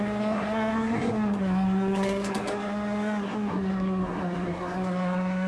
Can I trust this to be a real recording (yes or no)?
no